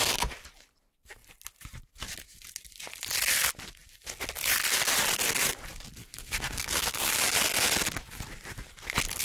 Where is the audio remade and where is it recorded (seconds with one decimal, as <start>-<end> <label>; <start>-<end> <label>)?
0.0-6.0 recorded; 6.0-7.1 remade; 7.1-9.2 recorded